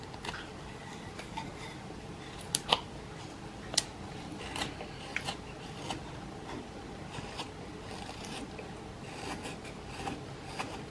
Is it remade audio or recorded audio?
recorded